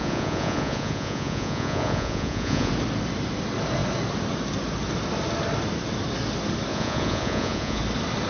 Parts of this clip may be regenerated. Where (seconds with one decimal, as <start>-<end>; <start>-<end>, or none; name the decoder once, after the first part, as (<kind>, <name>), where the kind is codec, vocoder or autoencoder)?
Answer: 0.0-2.7 (vocoder, Vocos); 6.7-7.8